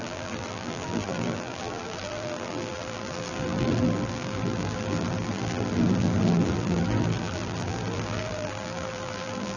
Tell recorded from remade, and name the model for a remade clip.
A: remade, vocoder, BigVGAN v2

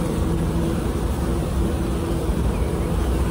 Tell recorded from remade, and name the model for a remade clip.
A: remade, vocoder, BigVGAN v2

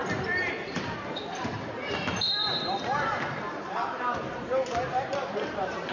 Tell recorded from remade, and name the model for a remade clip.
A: remade, vocoder, BigVGAN v2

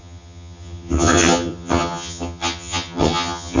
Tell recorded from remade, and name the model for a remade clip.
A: remade, vocoder, HiFi-GAN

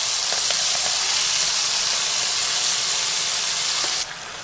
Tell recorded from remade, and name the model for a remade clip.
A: recorded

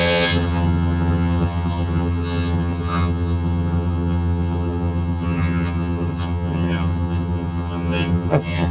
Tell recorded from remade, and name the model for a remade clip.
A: remade, vocoder, HiFi-GAN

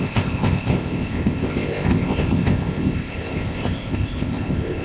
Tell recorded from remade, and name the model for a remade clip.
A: remade, codec, ZipCodec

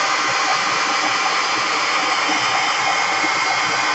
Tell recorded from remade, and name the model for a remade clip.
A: recorded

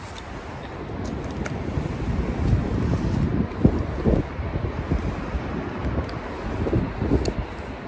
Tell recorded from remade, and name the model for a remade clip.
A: recorded